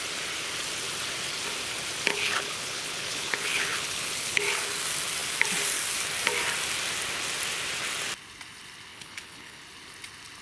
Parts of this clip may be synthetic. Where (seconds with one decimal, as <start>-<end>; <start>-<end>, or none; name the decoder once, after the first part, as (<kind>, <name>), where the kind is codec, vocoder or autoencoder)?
2.1-4.4 (codec, HILCodec); 8.9-9.6